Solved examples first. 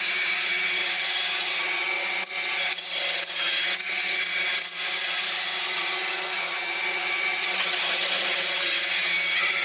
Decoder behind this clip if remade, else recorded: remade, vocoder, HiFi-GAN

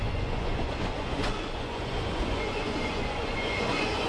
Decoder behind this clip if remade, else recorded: remade, vocoder, Vocos